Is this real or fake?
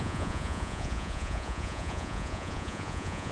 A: fake